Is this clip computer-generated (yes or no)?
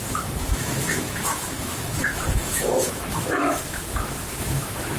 yes